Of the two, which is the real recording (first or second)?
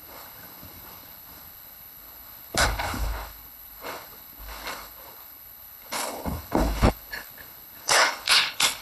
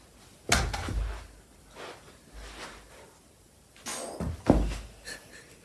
second